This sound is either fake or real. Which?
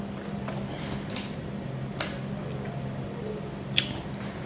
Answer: real